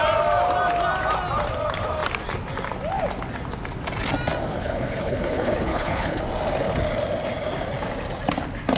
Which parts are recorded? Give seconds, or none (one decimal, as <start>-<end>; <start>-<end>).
0.0-4.5; 6.2-8.8